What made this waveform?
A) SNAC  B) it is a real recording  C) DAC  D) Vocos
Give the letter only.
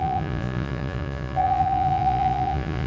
D